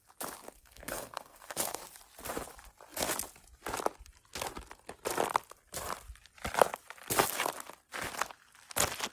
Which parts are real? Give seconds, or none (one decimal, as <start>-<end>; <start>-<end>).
0.0-0.6; 1.8-9.1

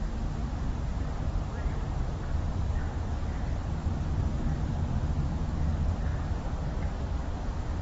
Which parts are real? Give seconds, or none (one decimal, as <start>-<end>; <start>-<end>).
0.0-0.4; 2.0-6.1; 7.3-7.8